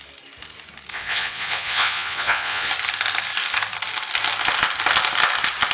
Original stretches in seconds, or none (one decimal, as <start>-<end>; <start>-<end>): 0.0-0.9; 2.7-5.7